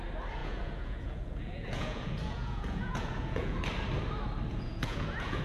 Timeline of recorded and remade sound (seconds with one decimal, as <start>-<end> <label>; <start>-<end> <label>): 0.0-0.4 recorded; 0.4-3.6 remade; 3.6-4.5 recorded; 4.5-5.4 remade